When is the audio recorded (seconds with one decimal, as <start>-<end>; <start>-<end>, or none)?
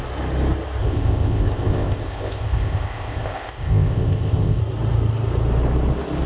0.0-0.8; 4.6-6.3